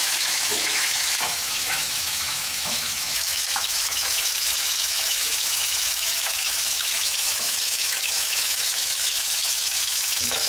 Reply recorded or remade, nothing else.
remade